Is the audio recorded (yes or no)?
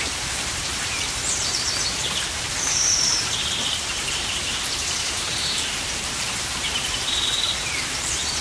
no